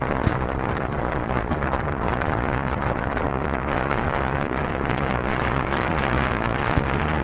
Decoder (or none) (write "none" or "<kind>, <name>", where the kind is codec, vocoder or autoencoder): vocoder, Vocos